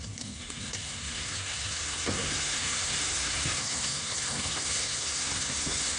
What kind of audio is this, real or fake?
fake